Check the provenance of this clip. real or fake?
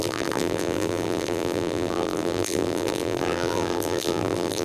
fake